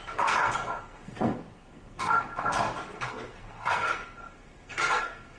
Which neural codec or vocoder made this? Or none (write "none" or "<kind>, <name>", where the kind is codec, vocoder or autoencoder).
codec, SNAC